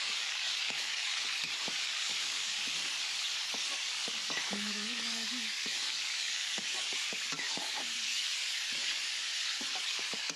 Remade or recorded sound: remade